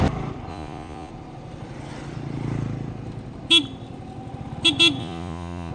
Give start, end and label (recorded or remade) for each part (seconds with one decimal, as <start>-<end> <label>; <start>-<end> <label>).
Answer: 0.0-0.5 recorded; 0.5-1.1 remade; 1.1-5.0 recorded; 5.0-5.7 remade